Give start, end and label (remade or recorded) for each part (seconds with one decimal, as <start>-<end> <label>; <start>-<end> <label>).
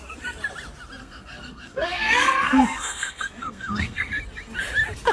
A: 0.0-1.0 recorded; 1.0-4.1 remade; 4.1-5.1 recorded